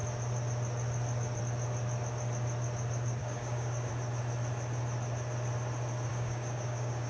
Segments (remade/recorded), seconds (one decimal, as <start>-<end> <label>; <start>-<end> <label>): 0.0-3.2 recorded; 3.2-3.9 remade; 3.9-6.1 recorded; 6.1-7.1 remade